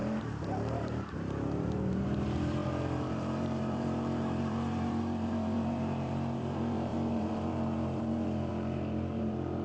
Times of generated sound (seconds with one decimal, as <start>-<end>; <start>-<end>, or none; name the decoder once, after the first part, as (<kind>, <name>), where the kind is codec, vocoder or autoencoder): 0.0-9.6 (vocoder, BigVGAN v2)